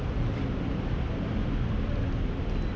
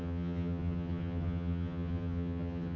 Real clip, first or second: first